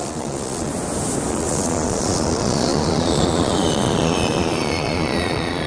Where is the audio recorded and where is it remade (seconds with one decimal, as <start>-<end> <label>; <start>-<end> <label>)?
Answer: 0.0-0.7 remade; 0.7-1.3 recorded; 1.3-5.7 remade